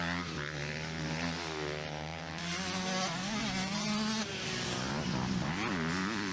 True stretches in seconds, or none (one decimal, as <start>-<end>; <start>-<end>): 0.0-4.3; 4.9-6.3